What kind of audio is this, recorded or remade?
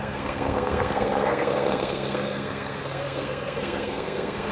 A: remade